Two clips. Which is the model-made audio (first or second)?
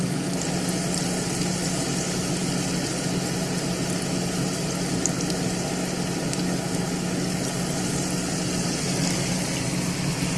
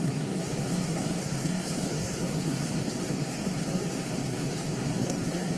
second